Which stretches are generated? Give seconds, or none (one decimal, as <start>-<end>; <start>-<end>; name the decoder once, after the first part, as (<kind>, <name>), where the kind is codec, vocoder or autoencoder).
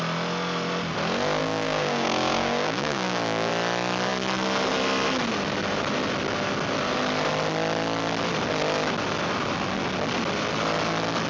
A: 1.4-3.5 (codec, DAC)